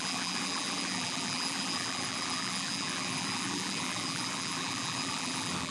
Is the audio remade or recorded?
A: remade